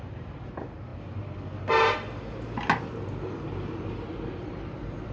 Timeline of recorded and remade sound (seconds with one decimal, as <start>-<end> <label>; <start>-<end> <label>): 0.0-5.1 recorded